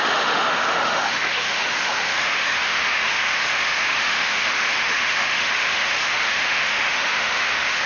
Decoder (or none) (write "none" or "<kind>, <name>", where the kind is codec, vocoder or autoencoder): autoencoder, DAC-VAE